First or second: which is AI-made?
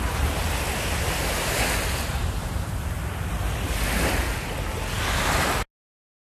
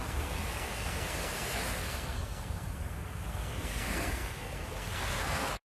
second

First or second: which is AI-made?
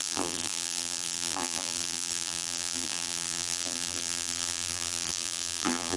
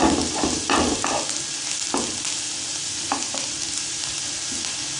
first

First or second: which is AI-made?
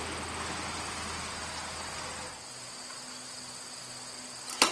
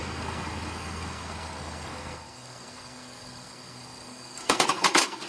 second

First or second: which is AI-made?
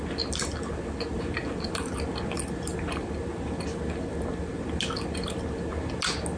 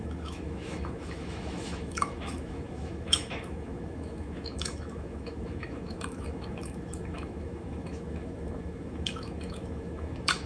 second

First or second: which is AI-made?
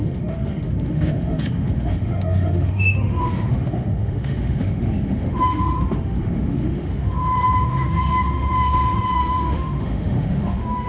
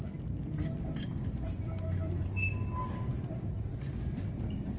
first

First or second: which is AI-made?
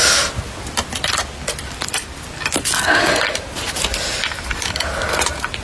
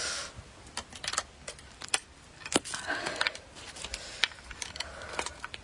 second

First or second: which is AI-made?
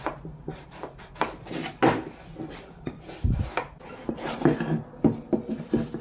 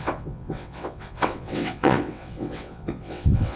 second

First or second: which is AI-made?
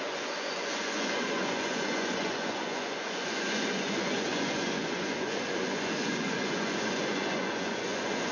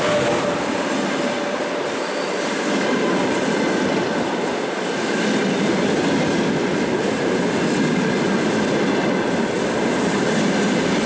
first